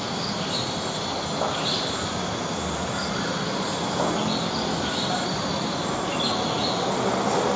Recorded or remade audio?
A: recorded